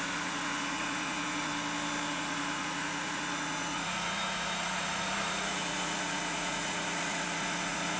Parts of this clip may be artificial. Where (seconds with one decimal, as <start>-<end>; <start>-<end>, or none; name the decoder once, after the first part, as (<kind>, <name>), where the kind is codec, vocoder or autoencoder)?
0.0-1.5 (vocoder, Vocos); 2.1-8.0